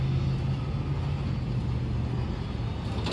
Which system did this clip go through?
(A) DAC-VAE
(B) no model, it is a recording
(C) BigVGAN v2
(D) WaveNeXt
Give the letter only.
B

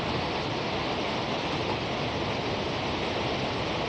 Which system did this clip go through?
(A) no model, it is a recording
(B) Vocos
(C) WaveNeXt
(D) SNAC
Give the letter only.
A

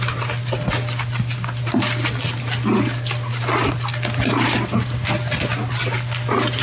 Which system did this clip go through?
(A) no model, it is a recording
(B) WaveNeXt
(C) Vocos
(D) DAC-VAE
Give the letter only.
A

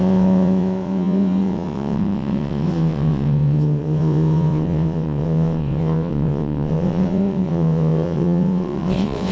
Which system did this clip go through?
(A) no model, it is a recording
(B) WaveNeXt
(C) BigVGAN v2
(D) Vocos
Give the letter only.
B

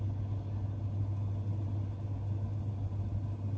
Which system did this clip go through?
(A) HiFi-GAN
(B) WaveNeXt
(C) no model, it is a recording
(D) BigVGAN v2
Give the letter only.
C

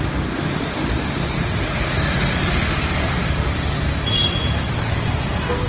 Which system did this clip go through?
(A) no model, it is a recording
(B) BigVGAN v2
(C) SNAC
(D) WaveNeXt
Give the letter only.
A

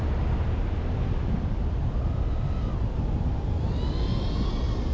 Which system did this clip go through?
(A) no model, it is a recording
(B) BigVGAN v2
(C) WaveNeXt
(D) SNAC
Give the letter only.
A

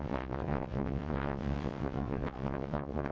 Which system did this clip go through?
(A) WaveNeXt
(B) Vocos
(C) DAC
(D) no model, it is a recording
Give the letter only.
A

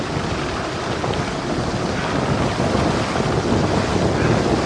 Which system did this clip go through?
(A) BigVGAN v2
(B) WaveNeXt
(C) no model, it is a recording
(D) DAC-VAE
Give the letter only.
C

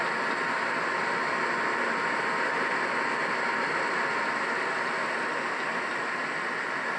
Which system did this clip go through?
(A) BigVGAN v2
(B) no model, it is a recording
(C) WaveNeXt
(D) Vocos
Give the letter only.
B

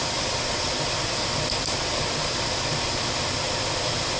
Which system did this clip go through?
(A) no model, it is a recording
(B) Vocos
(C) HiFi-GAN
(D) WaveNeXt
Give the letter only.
A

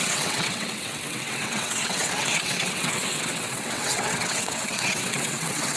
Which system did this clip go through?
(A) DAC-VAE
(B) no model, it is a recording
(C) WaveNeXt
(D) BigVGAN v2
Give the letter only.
C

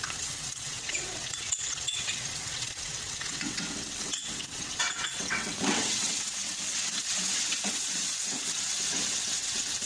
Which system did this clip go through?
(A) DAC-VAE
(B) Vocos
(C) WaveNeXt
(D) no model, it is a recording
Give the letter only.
C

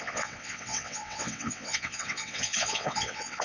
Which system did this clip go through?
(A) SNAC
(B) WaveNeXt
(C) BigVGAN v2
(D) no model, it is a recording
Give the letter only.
B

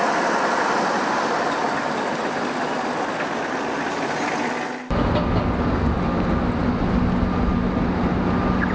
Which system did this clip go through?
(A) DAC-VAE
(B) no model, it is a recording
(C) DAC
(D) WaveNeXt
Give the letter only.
B